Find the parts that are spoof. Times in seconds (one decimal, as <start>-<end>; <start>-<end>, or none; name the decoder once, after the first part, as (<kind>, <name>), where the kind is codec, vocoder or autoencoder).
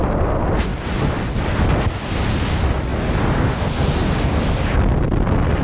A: none